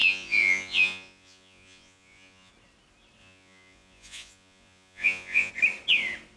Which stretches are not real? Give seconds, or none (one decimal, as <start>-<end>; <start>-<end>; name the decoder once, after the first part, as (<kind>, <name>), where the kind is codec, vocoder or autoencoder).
0.0-2.5 (vocoder, Vocos); 3.2-5.5